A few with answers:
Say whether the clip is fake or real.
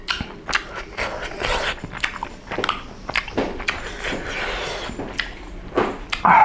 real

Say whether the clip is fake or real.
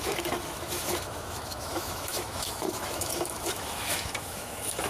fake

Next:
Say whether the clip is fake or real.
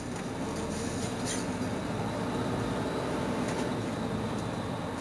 real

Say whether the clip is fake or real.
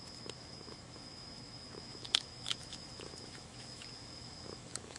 fake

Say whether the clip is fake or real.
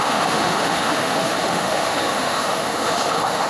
fake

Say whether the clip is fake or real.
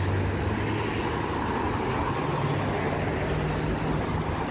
real